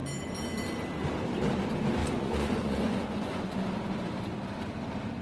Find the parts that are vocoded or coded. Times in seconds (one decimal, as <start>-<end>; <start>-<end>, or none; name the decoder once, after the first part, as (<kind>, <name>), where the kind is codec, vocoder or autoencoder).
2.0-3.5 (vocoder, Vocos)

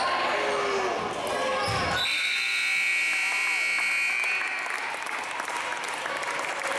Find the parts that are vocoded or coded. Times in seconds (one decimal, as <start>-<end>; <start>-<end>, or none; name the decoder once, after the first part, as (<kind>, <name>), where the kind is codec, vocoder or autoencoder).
none

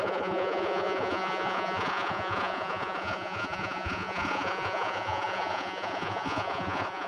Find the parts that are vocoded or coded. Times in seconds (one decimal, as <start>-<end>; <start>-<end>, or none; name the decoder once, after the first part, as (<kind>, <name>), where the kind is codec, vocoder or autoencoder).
0.0-7.1 (vocoder, Vocos)

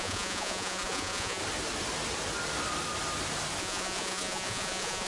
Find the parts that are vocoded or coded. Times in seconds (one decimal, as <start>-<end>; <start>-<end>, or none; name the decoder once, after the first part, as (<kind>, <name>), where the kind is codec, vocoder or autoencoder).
0.0-1.4 (vocoder, Vocos); 3.6-5.1

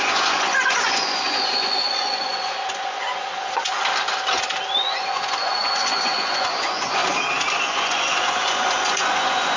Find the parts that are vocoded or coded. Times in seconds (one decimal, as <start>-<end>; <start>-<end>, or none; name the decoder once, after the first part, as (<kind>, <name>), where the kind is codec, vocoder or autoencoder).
0.0-3.7 (vocoder, Vocos); 4.7-7.0; 7.6-9.6

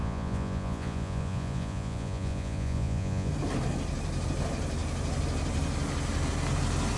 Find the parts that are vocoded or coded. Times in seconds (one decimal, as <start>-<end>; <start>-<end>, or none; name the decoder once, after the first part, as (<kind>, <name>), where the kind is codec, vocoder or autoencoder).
0.0-3.3 (vocoder, Vocos)

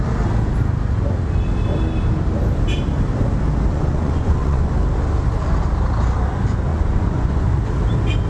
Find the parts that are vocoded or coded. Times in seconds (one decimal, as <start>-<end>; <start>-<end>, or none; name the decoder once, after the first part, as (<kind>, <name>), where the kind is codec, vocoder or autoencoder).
3.7-4.7 (vocoder, Vocos); 6.7-7.6

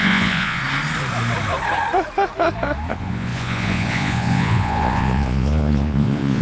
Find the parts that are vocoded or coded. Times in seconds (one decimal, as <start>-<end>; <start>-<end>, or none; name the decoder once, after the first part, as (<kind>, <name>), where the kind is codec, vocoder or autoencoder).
0.0-0.6 (vocoder, Vocos); 2.9-6.4